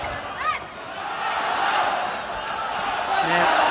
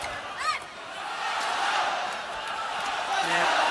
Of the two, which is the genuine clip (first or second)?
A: first